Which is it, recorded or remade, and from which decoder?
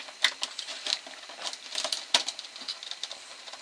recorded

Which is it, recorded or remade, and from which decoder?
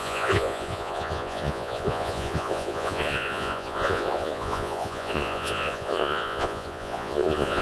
remade, vocoder, Vocos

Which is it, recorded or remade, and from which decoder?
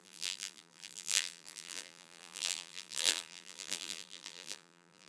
remade, vocoder, BigVGAN v2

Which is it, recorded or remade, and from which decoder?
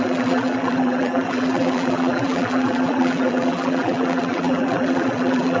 remade, vocoder, BigVGAN v2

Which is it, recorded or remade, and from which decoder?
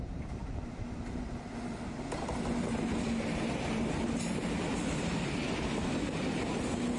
recorded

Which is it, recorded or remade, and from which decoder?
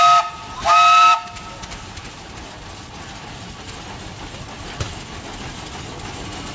recorded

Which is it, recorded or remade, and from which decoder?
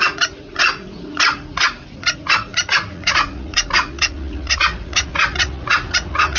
remade, vocoder, Vocos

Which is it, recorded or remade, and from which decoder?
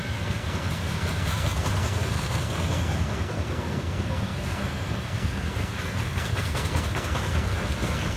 remade, codec, SNAC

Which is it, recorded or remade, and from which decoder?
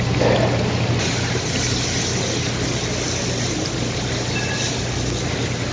recorded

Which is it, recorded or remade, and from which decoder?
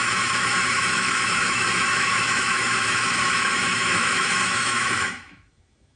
remade, autoencoder, DAC-VAE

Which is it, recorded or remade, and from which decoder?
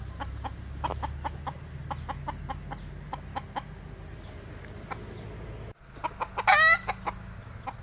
recorded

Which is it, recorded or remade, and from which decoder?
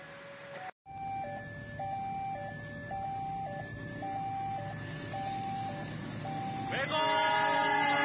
recorded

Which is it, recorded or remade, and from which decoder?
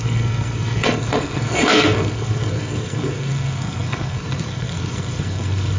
remade, codec, SNAC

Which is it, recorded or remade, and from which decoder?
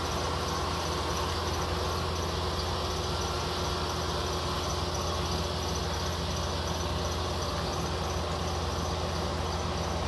recorded